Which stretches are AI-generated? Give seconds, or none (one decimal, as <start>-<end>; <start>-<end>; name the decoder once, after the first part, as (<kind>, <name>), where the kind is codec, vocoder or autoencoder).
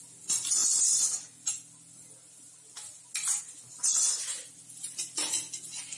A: none